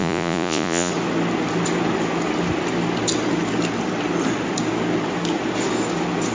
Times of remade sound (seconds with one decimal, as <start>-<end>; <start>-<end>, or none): 0.0-0.9